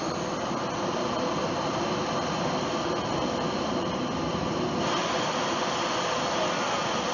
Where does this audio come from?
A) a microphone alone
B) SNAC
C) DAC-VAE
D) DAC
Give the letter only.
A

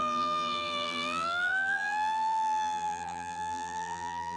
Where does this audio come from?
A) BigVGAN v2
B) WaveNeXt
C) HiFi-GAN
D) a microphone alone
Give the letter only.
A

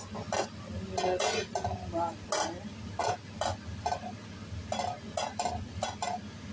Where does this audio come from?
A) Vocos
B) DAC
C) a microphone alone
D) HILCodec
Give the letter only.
C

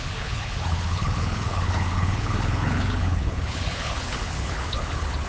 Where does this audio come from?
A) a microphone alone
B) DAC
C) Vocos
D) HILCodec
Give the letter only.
D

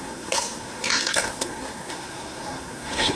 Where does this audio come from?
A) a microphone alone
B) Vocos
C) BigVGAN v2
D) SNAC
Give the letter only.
D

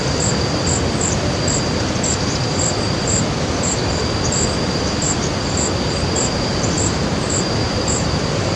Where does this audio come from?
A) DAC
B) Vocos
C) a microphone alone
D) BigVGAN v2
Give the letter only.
D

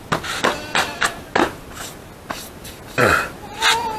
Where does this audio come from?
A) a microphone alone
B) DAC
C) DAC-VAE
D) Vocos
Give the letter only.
A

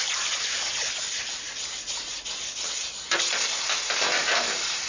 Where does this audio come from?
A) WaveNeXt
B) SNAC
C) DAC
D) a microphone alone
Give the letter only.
D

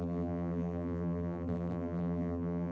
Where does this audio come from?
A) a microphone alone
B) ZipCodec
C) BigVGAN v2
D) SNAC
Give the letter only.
C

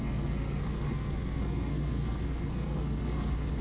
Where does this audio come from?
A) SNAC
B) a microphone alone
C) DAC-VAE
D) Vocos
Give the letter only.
A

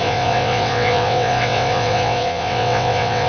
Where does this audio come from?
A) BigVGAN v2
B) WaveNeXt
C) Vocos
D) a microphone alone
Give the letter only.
B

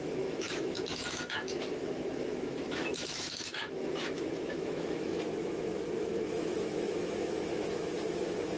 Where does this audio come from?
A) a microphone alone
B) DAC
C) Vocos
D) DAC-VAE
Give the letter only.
D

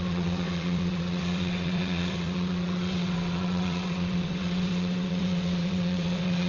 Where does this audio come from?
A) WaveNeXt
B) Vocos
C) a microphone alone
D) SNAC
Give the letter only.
A